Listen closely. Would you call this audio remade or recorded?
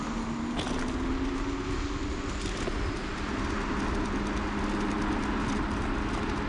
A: recorded